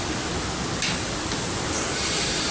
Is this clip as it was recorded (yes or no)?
yes